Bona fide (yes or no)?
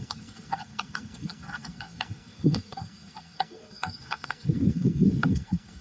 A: no